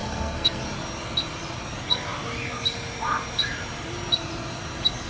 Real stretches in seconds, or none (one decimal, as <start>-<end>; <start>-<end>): 0.6-5.1